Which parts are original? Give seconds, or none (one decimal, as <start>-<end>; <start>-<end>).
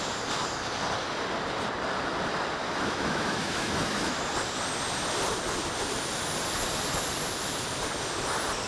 0.0-2.6; 4.3-8.7